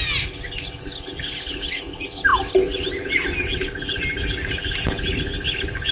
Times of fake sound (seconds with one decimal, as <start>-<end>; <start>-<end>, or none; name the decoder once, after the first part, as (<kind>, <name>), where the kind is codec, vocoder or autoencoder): none